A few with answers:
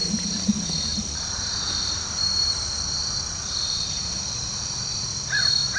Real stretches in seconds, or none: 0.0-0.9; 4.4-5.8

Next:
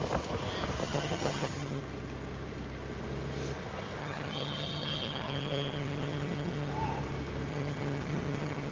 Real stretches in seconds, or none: 0.0-0.8; 1.8-4.0; 6.7-7.5